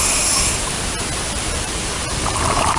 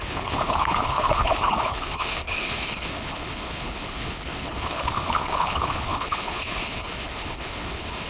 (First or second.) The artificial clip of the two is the second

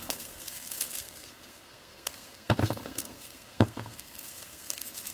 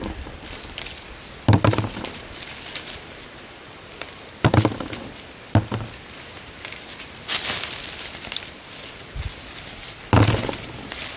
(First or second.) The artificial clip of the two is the first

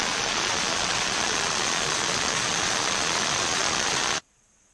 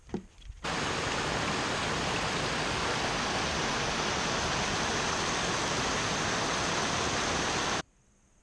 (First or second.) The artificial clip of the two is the first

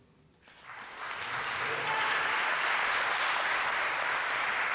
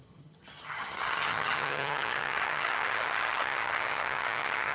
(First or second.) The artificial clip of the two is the second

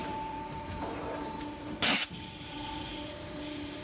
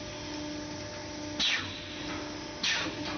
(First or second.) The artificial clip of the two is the first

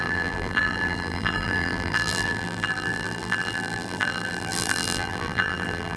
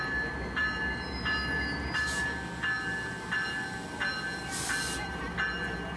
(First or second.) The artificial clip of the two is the first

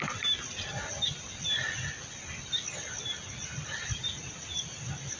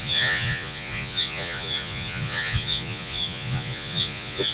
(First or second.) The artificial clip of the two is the second